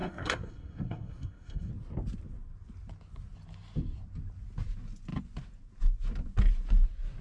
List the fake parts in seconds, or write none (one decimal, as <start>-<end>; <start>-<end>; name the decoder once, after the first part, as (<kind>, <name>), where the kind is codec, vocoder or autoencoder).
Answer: 0.0-1.7 (codec, SNAC)